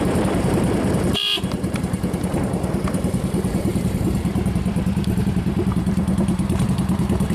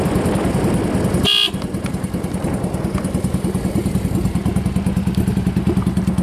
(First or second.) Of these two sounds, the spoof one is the first